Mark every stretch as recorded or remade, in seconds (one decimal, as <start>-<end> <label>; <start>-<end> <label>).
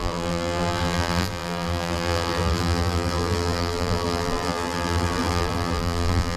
0.0-6.4 remade